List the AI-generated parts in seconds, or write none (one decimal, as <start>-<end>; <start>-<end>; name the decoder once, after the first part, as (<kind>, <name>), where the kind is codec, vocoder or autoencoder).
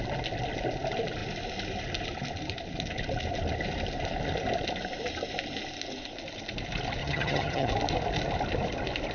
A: 7.0-7.7 (vocoder, HiFi-GAN)